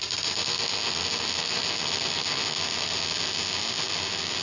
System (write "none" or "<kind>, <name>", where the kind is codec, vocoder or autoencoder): none